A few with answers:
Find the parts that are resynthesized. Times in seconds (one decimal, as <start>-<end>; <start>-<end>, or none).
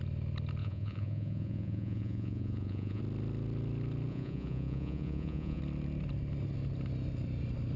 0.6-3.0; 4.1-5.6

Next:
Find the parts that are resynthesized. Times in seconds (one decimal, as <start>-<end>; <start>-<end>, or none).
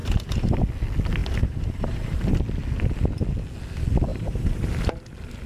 0.0-0.6; 1.2-2.3; 4.1-4.8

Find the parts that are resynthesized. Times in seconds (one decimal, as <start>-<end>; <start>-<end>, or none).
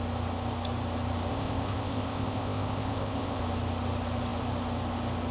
1.3-3.4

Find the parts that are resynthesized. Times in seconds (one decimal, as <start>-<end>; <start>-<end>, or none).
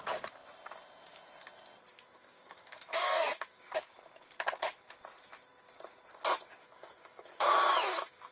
1.9-3.6; 6.6-8.3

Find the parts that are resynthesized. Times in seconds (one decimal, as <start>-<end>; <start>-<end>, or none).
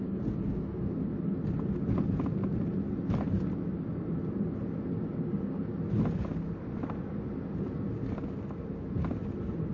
0.0-1.1; 4.9-5.7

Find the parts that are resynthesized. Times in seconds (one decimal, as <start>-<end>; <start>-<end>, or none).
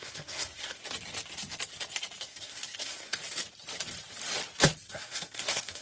0.0-0.8; 2.2-3.2; 4.9-5.8